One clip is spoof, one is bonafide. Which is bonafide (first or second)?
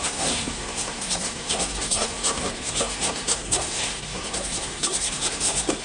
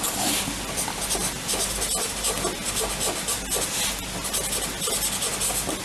second